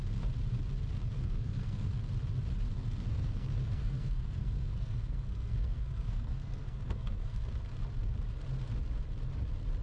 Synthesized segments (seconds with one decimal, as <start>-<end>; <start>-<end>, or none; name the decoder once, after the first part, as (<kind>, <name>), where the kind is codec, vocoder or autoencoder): 0.9-2.0 (codec, SNAC); 2.7-7.5